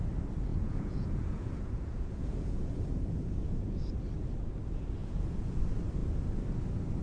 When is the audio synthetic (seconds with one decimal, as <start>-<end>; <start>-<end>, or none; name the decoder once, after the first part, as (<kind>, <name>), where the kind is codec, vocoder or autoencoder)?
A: 0.5-3.9 (vocoder, Vocos); 5.0-5.6